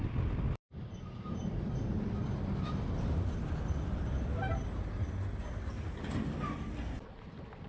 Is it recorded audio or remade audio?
recorded